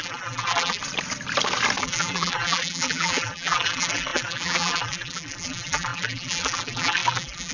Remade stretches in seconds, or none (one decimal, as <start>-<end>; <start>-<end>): 0.0-0.8; 1.8-7.5